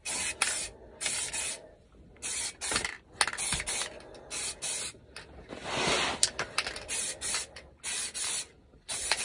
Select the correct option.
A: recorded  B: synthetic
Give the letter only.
A